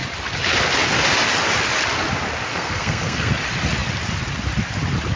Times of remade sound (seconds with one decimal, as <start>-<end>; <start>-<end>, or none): 2.5-3.3